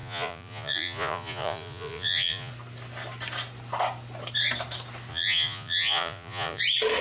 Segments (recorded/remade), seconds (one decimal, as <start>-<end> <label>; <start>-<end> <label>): 0.0-2.5 remade; 2.5-5.1 recorded; 5.1-6.6 remade; 6.6-7.0 recorded